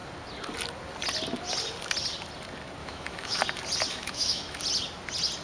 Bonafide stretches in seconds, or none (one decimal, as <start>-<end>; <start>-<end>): 0.0-2.8; 3.4-3.9; 4.6-5.4